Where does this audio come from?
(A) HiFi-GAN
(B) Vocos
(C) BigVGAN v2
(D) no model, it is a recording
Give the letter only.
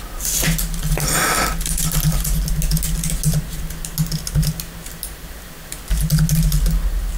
D